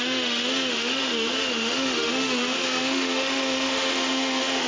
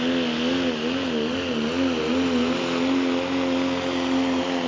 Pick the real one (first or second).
second